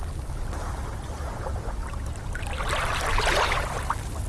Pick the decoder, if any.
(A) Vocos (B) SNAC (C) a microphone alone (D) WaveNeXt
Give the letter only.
C